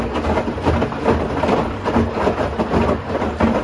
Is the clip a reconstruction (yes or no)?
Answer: no